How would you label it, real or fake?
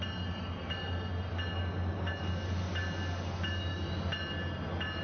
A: real